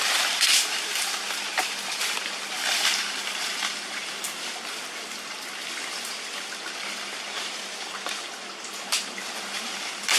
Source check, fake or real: fake